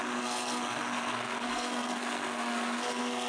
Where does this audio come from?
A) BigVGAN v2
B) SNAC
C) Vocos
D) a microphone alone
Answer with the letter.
B